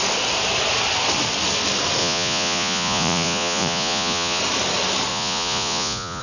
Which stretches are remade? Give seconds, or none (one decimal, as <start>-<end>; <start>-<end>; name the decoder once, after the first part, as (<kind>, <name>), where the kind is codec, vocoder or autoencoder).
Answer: 2.0-4.4 (vocoder, Vocos); 5.1-6.2